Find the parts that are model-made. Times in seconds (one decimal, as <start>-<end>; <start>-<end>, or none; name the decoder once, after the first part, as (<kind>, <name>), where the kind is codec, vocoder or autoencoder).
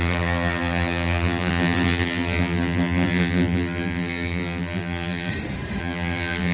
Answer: 0.0-5.3 (vocoder, BigVGAN v2); 5.8-6.5